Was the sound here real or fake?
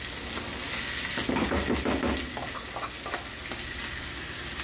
real